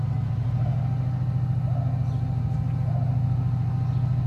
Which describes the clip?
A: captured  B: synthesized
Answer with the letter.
A